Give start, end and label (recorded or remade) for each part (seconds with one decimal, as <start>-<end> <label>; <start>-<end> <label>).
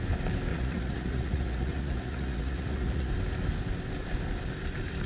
0.0-0.5 recorded; 0.5-3.1 remade; 3.1-5.1 recorded